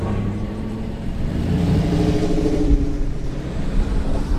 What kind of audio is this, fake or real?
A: fake